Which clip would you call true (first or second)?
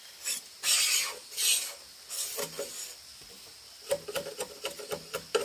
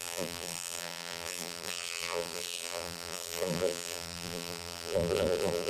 first